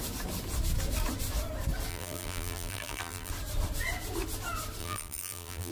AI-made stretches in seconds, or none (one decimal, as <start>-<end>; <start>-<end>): 1.9-3.3; 4.8-5.7

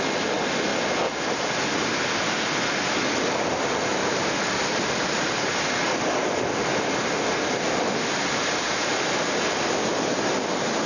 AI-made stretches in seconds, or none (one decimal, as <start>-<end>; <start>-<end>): 4.0-4.5

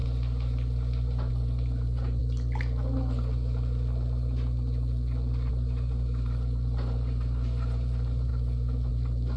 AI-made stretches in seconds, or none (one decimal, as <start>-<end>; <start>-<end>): 1.3-2.2; 5.5-8.3; 8.9-9.4

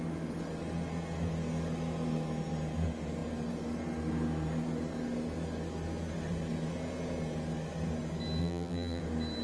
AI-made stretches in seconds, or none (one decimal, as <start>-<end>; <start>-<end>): 8.4-9.0